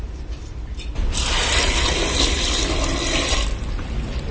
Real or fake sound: real